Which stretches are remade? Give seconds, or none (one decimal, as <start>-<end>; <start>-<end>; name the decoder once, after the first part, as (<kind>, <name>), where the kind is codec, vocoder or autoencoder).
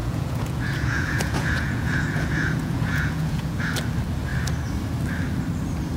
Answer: 0.0-3.6 (vocoder, Vocos)